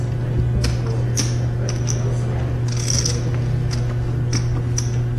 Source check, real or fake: real